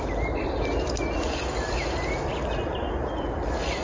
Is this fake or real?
real